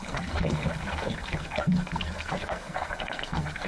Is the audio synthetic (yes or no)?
yes